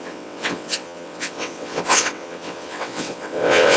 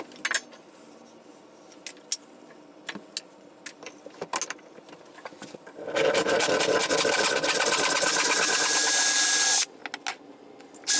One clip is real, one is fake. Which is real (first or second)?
second